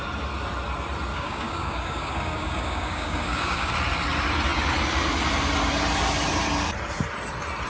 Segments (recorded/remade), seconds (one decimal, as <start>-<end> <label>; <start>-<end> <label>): 0.0-1.1 recorded; 1.1-3.7 remade; 3.7-7.7 recorded